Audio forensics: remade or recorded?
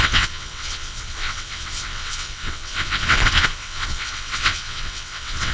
remade